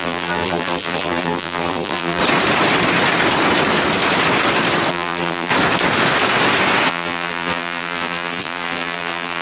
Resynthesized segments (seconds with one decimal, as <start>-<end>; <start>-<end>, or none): 0.0-2.2; 4.9-5.5; 6.9-9.4